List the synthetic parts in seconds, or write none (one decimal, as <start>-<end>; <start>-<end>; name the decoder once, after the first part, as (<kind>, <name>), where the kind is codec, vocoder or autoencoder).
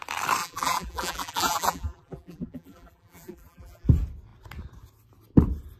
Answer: 0.4-3.9 (vocoder, BigVGAN v2)